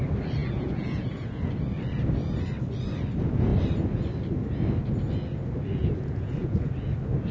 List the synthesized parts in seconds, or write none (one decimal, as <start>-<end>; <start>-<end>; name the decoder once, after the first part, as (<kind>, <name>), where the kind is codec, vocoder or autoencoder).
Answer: 0.4-1.5 (vocoder, Vocos); 5.8-6.7